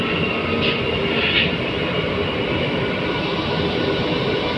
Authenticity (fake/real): real